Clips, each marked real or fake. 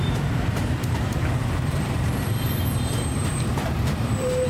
fake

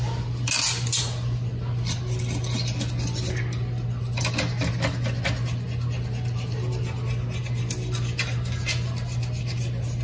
real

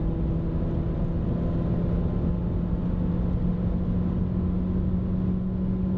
real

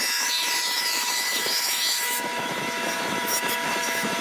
fake